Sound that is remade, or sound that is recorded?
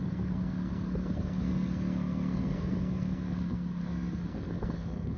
remade